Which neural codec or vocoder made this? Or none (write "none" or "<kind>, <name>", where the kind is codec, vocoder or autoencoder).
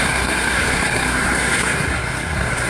codec, SNAC